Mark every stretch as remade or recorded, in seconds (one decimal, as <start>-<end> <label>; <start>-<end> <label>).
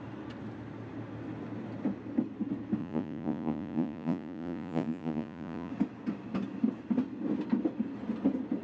0.0-2.8 recorded; 2.8-5.7 remade; 5.7-8.6 recorded